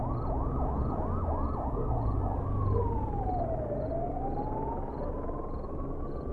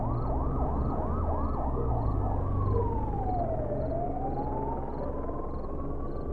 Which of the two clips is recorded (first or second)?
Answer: second